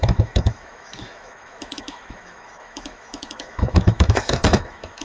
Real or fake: fake